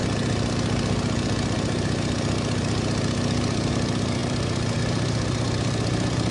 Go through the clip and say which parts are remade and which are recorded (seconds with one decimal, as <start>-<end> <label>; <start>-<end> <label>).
0.0-4.2 recorded; 4.2-6.3 remade